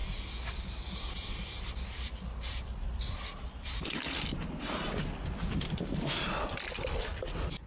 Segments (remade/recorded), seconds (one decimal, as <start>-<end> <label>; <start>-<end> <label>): 0.0-7.7 recorded